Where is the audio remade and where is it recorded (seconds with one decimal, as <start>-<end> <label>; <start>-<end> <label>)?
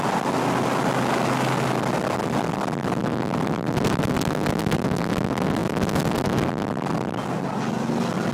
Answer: 0.0-8.3 recorded